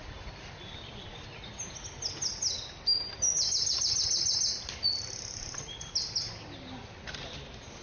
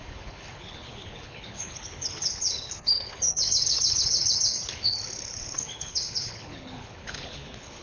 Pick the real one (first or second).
first